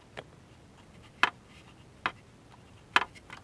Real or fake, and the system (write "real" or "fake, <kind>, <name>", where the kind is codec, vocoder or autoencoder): real